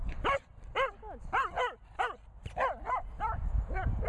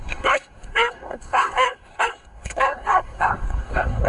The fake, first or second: second